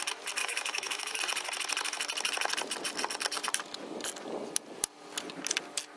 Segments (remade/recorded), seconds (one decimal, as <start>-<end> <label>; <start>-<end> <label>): 0.0-0.4 recorded; 0.4-1.2 remade; 1.2-6.0 recorded